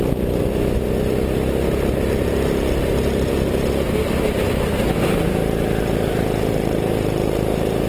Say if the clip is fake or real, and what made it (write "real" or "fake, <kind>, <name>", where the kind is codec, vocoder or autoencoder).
real